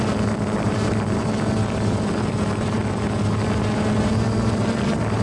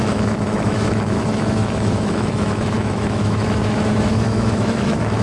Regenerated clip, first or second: second